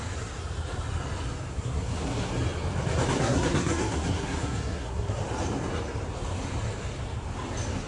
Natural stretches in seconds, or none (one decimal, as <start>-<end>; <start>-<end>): 0.0-1.5; 2.3-3.2; 5.2-7.9